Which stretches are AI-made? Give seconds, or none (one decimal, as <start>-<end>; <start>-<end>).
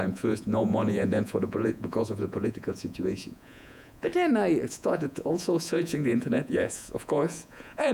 0.0-4.1; 4.7-7.9